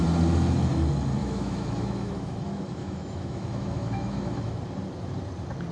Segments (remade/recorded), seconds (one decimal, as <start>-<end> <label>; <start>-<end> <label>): 0.0-1.2 recorded; 1.2-4.6 remade; 4.6-5.7 recorded